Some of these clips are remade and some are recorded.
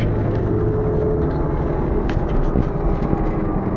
recorded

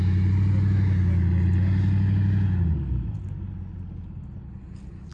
recorded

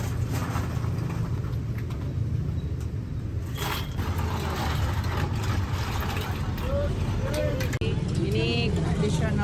recorded